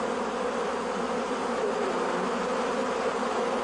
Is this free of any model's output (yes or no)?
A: yes